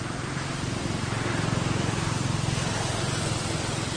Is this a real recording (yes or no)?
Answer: yes